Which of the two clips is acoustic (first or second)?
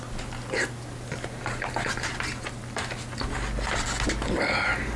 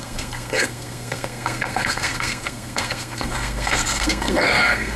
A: first